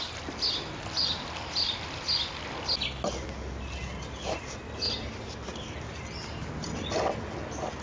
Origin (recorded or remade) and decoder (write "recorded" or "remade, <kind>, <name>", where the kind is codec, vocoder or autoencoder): recorded